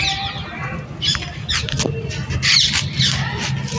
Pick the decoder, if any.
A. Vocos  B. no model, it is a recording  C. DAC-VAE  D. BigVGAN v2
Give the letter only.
B